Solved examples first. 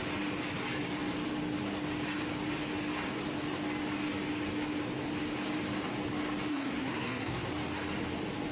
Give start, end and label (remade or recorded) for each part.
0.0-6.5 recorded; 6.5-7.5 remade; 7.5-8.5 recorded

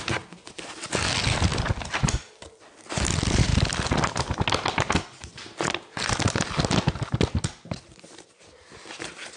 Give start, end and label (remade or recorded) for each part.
0.0-9.4 recorded